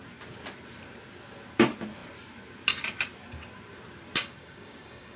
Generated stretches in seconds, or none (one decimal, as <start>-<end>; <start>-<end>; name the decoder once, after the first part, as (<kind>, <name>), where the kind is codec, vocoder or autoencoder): 4.2-5.2 (codec, DAC)